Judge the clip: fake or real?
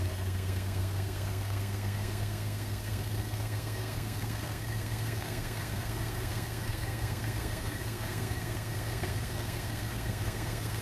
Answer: fake